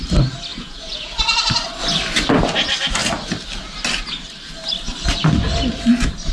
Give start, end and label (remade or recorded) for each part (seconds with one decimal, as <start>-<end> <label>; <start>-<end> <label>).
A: 0.0-0.5 recorded; 0.5-1.1 remade; 1.1-6.3 recorded